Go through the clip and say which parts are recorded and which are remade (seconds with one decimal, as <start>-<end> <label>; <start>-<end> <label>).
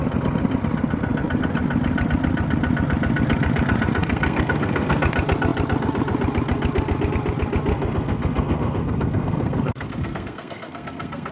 0.0-4.0 recorded; 4.0-5.0 remade; 5.0-7.7 recorded; 7.7-11.3 remade